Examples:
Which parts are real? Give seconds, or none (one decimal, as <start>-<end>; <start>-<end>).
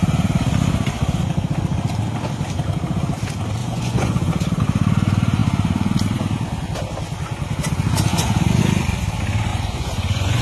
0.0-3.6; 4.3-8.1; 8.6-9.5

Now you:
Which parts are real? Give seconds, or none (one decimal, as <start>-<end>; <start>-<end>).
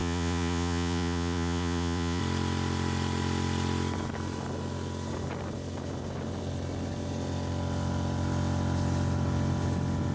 2.2-10.1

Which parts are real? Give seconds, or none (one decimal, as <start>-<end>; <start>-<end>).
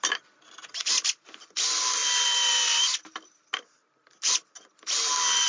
0.0-5.5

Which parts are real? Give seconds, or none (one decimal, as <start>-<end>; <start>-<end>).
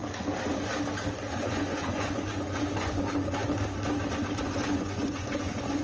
0.0-1.4; 3.4-4.4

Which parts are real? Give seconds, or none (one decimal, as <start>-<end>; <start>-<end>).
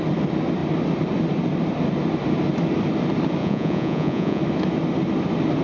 0.0-3.4; 4.4-5.6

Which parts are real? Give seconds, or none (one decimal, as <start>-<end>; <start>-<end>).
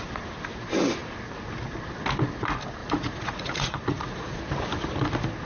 0.0-2.8; 4.4-5.5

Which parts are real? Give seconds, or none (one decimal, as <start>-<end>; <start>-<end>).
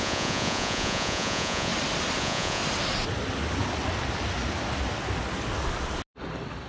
1.7-2.2; 2.6-6.7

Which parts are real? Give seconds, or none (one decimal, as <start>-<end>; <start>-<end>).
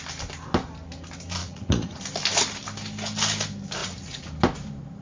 0.0-1.4; 2.0-3.8; 4.3-5.0